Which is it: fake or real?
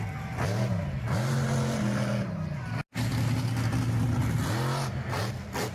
real